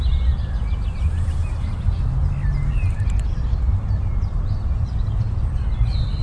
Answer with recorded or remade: recorded